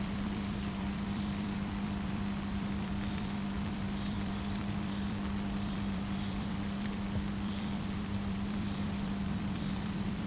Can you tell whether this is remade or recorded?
remade